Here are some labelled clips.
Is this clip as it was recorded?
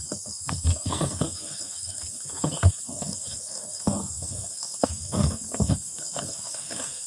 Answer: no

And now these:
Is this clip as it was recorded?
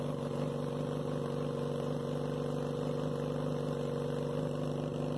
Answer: yes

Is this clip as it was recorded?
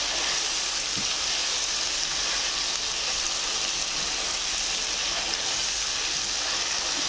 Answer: yes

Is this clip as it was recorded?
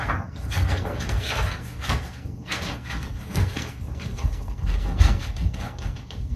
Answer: no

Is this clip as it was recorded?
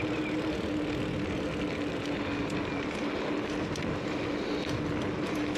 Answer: yes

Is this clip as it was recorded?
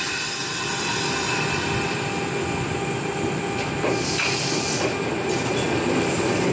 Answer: yes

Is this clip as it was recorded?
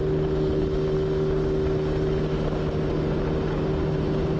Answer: yes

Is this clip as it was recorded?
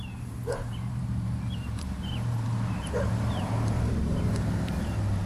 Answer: no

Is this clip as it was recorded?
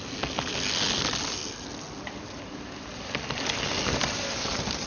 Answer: yes